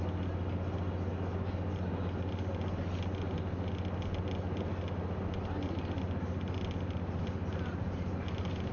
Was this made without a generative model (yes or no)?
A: yes